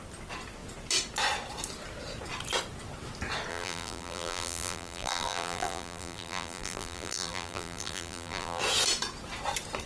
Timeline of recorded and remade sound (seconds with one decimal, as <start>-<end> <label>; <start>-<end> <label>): 0.0-3.5 recorded; 3.5-8.6 remade; 8.6-9.9 recorded